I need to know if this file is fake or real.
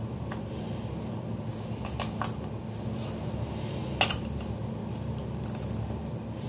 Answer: real